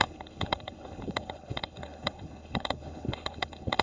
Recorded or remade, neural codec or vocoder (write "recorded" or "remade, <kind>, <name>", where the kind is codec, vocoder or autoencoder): remade, codec, HILCodec